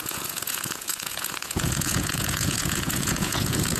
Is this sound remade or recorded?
remade